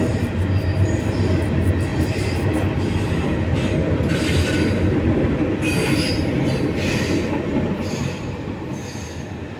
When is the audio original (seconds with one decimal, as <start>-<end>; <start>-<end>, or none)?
0.0-9.6